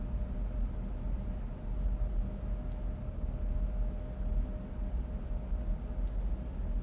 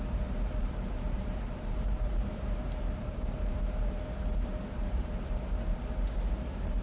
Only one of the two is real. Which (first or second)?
first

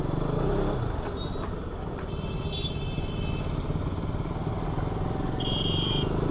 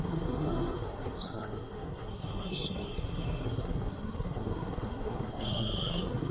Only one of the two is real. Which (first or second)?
first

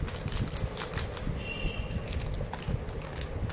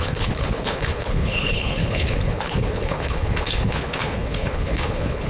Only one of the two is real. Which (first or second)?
first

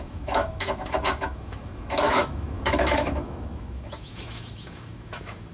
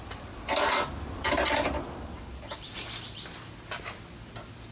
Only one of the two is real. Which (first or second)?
second